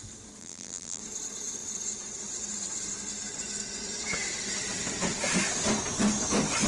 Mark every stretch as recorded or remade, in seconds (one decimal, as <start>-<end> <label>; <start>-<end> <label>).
0.0-0.4 recorded; 0.4-1.0 remade; 1.0-6.7 recorded